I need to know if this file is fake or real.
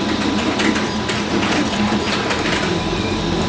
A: real